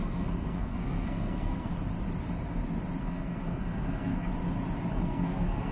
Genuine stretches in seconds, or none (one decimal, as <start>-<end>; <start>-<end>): 1.7-3.0; 4.3-4.9